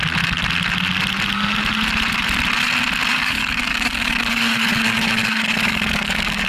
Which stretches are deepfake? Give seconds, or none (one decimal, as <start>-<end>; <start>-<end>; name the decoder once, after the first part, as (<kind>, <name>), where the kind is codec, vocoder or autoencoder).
3.1-6.5 (codec, DAC)

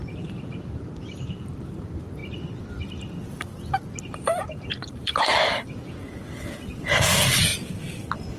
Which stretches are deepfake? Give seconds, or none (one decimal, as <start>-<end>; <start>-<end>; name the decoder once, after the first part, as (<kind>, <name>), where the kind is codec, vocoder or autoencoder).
0.0-2.2 (vocoder, BigVGAN v2); 4.0-7.5

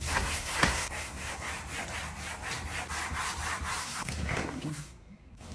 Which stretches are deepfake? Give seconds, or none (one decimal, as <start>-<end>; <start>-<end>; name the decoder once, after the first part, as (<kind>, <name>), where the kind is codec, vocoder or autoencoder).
0.0-1.5 (codec, SNAC); 3.8-5.5

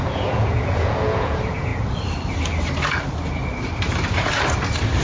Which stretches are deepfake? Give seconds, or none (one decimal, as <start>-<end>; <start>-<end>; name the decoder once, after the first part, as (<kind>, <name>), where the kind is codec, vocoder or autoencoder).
0.0-1.7 (vocoder, Vocos)